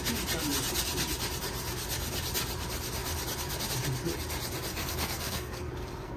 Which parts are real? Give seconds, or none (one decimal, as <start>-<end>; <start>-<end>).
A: 0.0-4.7

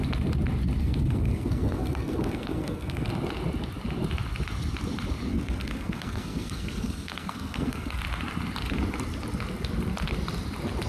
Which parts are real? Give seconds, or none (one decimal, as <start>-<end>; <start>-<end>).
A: 0.0-0.8; 3.1-5.3; 8.0-10.9

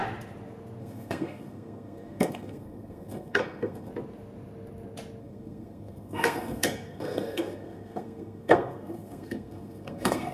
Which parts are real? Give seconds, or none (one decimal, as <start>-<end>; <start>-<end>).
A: 0.0-0.8; 3.9-5.2

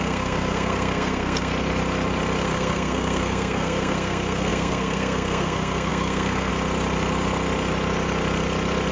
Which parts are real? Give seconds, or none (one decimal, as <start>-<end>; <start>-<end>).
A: 1.5-2.4; 6.5-8.9

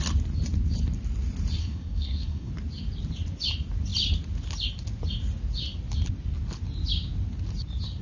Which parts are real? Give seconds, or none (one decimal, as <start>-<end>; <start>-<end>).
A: 0.0-1.6; 2.5-8.0

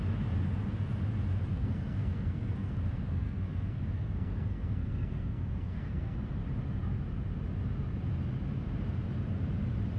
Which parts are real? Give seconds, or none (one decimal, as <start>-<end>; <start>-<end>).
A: 0.0-1.5; 6.2-10.0

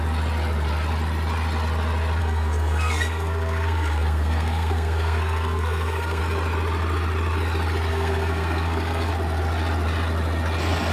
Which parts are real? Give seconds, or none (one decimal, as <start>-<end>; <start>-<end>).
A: 0.0-2.2; 6.2-7.9; 9.1-10.9

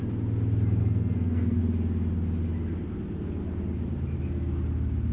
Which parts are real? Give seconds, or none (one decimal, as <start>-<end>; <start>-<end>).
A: 0.0-0.8; 1.6-5.1